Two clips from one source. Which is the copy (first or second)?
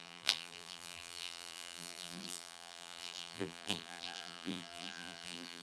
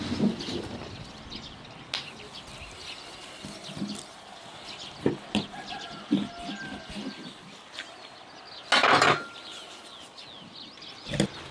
first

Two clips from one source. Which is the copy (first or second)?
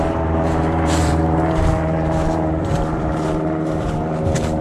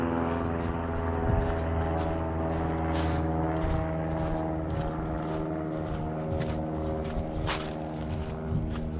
first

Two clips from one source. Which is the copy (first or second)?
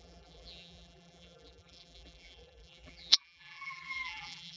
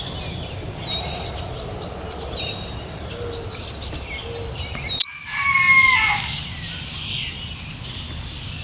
first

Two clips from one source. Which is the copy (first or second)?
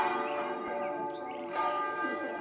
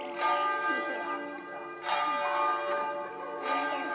first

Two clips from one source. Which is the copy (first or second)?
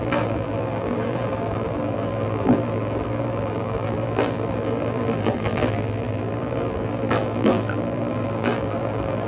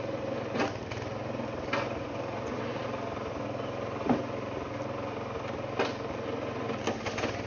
first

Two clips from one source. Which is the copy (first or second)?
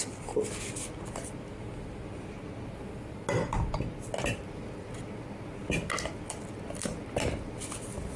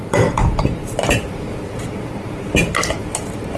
second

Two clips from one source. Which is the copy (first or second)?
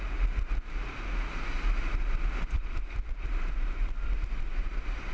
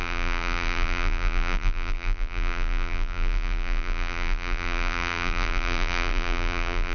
second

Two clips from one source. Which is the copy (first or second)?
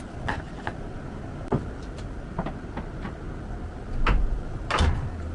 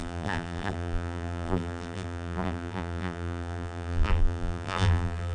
second